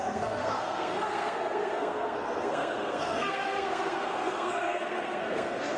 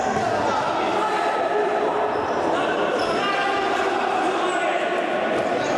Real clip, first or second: second